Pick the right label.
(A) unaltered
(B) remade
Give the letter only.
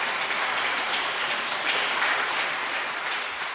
A